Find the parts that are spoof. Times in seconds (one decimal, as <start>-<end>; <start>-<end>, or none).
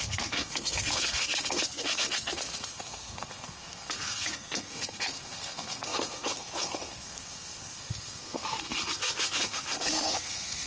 0.0-10.7